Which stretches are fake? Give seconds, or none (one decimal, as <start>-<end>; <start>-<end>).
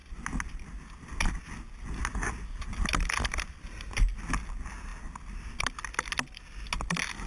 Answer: none